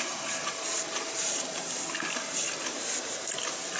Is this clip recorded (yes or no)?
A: yes